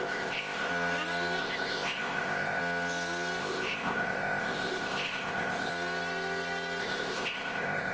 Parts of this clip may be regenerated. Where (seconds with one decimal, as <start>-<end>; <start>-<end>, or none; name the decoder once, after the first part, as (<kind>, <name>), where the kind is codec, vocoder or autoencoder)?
0.0-0.7 (codec, ZipCodec); 1.4-2.6; 3.4-5.7; 6.8-7.9